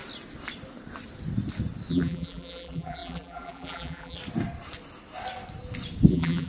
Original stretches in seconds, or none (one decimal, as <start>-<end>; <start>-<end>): 0.0-1.9; 4.2-6.1